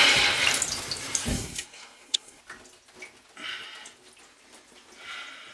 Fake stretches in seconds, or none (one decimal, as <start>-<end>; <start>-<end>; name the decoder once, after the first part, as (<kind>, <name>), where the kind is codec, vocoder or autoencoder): 1.3-2.4 (codec, SNAC)